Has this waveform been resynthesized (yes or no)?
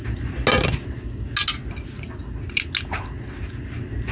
no